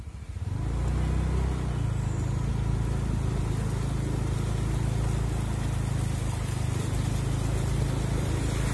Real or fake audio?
real